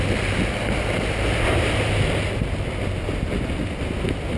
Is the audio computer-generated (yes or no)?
no